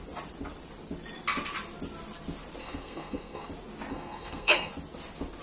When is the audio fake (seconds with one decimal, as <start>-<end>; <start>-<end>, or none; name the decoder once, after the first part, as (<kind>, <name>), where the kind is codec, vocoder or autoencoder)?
2.6-3.5 (codec, SNAC); 3.9-4.7